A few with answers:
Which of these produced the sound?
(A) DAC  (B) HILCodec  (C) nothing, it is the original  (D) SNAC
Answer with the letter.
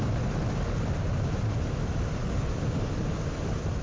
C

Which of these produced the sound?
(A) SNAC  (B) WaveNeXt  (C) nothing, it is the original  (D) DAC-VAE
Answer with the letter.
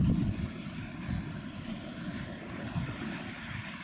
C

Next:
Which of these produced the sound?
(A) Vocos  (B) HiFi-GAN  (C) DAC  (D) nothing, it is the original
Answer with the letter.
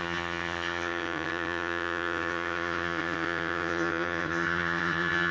B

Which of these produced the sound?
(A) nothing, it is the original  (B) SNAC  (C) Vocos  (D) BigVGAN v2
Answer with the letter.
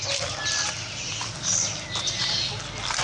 A